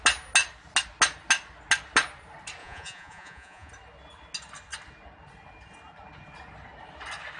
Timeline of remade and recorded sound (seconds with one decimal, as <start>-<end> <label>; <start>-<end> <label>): 0.0-2.6 recorded; 2.6-3.7 remade; 3.7-7.4 recorded